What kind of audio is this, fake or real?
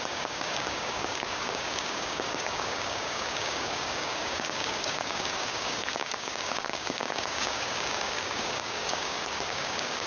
fake